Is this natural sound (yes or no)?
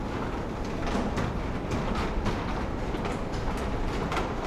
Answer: yes